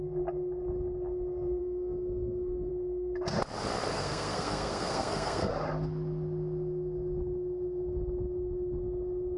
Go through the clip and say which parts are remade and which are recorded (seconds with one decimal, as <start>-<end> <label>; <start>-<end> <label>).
0.0-1.6 recorded; 1.6-2.7 remade; 2.7-3.9 recorded; 3.9-5.5 remade; 5.5-9.4 recorded